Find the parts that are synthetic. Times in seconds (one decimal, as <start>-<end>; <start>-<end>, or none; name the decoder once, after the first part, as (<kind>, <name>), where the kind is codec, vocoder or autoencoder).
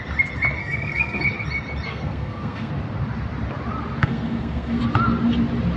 0.6-1.2 (codec, SNAC); 1.9-2.7; 4.0-4.8